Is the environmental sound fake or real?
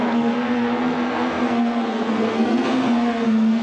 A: fake